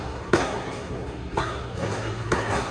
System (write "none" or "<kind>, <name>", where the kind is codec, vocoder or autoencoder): codec, SNAC